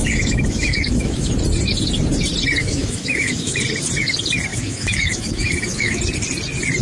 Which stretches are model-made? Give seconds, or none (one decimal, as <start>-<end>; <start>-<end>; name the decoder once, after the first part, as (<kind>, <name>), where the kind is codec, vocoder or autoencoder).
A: 0.0-1.3 (autoencoder, DAC-VAE); 2.6-3.6; 4.5-6.0